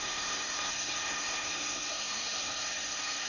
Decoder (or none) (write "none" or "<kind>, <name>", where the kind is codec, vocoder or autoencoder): codec, SNAC